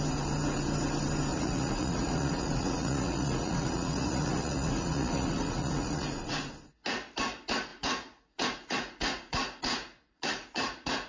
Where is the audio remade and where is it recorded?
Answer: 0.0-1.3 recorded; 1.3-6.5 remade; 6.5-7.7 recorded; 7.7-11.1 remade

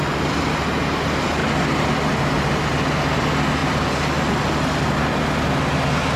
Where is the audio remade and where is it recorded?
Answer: 0.0-6.2 recorded

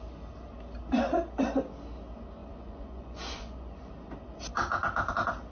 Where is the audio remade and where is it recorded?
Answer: 0.0-2.4 recorded; 2.4-3.9 remade; 3.9-5.5 recorded

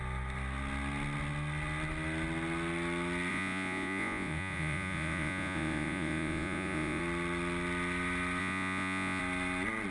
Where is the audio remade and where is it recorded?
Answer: 0.0-3.3 recorded; 3.3-7.0 remade; 7.0-8.4 recorded; 8.4-9.2 remade; 9.2-9.9 recorded

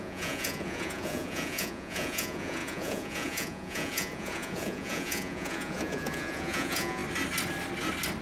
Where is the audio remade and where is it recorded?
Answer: 0.0-7.0 remade; 7.0-8.2 recorded

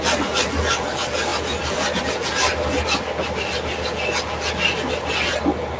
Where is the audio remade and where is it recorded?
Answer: 0.0-5.8 recorded